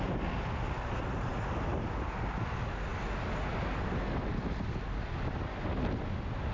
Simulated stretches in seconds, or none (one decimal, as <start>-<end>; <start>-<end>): none